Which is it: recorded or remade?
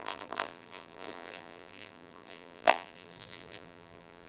remade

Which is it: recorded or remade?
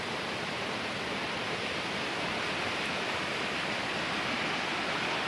recorded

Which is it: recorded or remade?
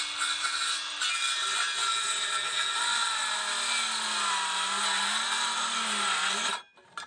recorded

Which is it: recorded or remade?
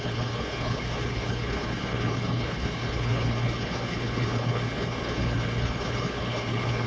remade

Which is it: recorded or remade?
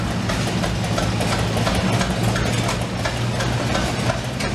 recorded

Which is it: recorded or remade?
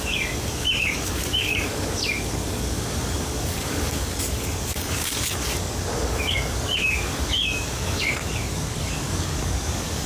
remade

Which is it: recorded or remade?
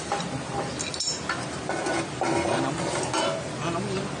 recorded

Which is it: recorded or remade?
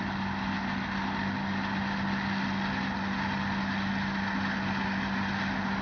recorded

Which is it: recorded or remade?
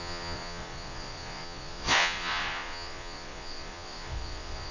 remade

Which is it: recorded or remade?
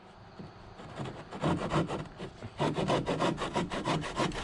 recorded